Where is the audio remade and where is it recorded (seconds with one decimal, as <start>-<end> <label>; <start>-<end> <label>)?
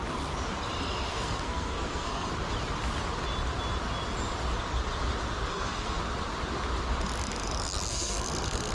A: 0.0-1.1 recorded; 1.1-2.3 remade; 2.3-5.5 recorded; 5.5-6.0 remade; 6.0-7.9 recorded; 7.9-8.7 remade